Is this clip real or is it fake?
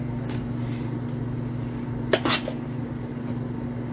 real